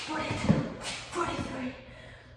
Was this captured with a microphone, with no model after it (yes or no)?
yes